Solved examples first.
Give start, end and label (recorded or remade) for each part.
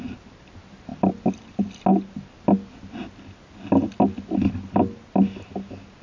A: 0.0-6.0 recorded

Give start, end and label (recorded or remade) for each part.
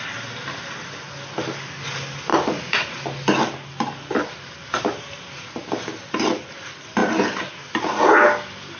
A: 0.0-8.8 recorded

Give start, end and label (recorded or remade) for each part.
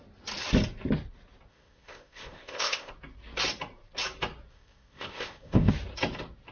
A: 0.0-1.5 recorded; 1.5-2.9 remade; 2.9-4.5 recorded; 4.5-5.7 remade; 5.7-6.5 recorded